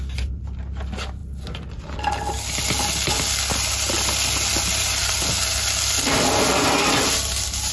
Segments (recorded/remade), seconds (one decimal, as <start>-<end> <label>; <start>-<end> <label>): 0.0-7.7 recorded